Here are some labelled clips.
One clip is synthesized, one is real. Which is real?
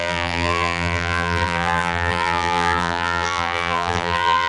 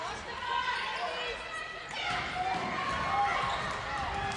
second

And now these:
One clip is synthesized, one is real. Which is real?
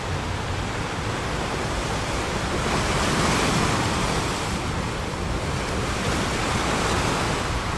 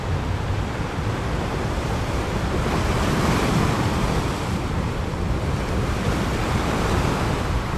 first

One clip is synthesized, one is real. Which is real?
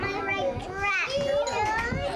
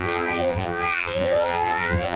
first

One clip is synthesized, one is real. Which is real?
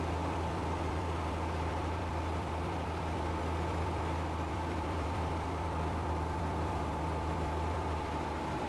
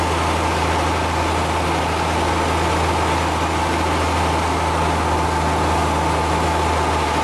second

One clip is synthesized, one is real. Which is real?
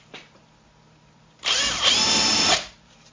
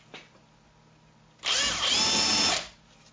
second